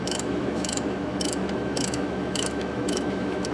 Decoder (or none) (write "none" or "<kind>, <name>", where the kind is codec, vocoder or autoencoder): autoencoder, DAC-VAE